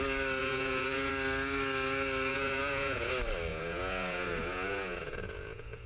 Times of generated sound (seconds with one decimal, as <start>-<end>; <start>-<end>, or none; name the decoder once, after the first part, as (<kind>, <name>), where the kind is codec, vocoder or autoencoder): 0.4-1.1 (vocoder, Vocos); 2.3-3.1; 3.5-5.9